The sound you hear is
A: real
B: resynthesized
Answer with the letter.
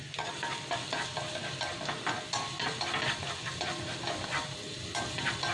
A